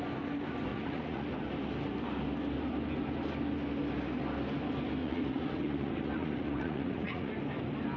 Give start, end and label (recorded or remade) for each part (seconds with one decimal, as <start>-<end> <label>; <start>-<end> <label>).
0.0-0.7 recorded; 0.7-1.3 remade; 1.3-5.0 recorded; 5.0-7.3 remade; 7.3-8.0 recorded